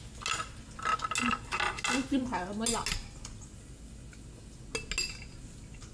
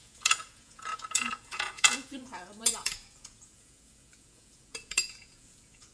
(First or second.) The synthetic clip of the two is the second